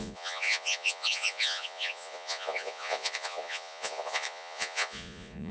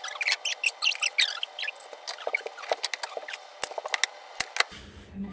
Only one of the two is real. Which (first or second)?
second